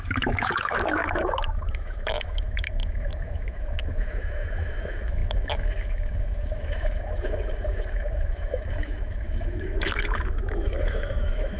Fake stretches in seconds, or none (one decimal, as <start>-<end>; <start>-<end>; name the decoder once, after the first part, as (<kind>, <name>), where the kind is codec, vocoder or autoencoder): 0.0-11.6 (autoencoder, DAC-VAE)